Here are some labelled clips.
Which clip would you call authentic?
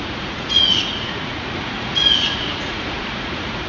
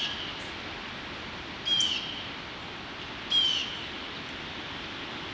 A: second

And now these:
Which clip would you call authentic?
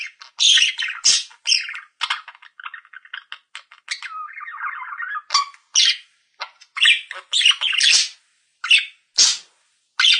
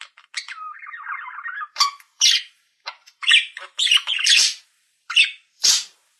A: first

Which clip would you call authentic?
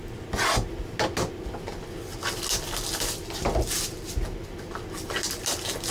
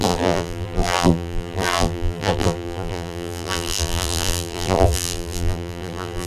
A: first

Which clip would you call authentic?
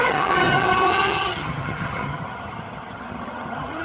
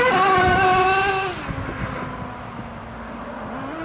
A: second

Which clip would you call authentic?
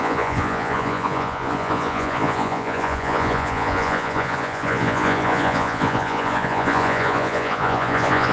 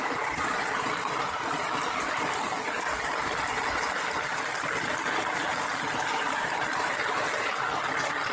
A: second